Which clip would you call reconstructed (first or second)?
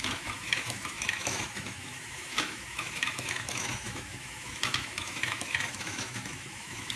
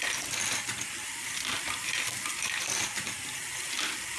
first